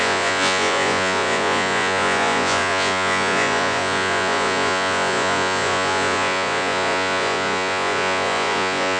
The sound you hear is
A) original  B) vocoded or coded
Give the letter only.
B